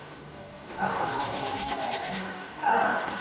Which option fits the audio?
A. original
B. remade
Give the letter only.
B